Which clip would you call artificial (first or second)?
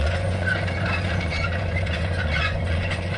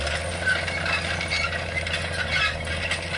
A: first